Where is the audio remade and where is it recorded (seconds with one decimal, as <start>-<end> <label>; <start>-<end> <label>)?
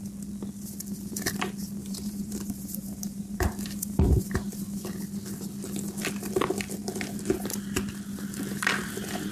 0.0-1.8 recorded; 1.8-4.8 remade; 4.8-9.3 recorded